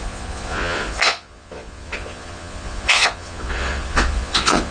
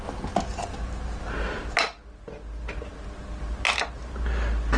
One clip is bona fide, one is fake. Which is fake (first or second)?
first